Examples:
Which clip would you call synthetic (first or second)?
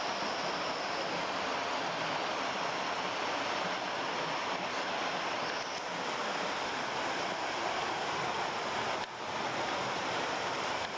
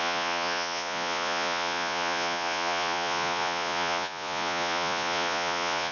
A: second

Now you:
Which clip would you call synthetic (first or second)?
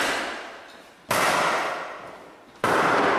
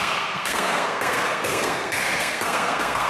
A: second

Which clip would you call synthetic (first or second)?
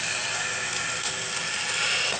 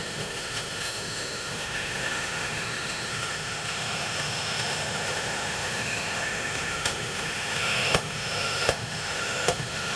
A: second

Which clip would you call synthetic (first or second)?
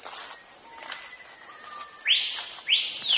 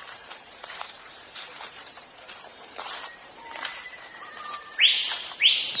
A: second